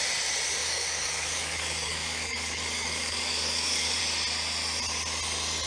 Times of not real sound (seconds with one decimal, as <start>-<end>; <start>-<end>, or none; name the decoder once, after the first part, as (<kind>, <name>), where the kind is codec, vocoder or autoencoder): 0.6-4.0 (codec, DAC)

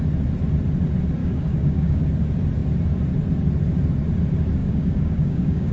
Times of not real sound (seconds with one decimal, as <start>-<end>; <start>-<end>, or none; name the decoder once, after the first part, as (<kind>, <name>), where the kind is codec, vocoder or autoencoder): 1.2-2.0 (codec, DAC); 4.6-5.7

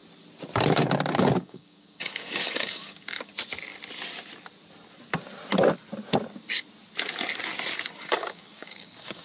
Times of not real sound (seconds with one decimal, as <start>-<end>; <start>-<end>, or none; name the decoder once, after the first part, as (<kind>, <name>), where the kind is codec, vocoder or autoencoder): 1.4-3.3 (codec, DAC); 8.0-9.2

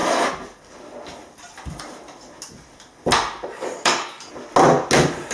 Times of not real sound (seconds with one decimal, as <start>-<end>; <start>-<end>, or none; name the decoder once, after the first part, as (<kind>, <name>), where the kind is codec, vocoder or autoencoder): 3.5-4.3 (codec, DAC)

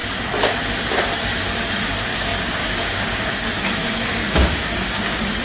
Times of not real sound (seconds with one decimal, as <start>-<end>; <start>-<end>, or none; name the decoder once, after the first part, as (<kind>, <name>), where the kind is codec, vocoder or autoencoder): 2.1-3.2 (codec, DAC); 3.8-5.4

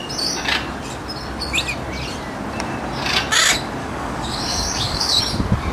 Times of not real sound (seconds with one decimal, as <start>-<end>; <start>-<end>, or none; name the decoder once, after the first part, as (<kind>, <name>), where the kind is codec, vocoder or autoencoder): 3.8-5.2 (codec, DAC)

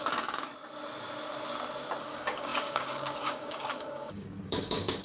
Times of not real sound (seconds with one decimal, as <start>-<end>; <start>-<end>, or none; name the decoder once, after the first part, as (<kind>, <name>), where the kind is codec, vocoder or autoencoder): 0.0-0.5 (codec, DAC); 2.0-5.0